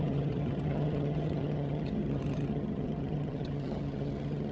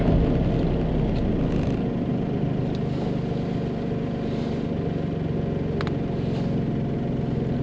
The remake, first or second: first